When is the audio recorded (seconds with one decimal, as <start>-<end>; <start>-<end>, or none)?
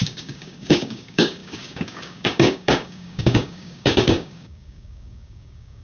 none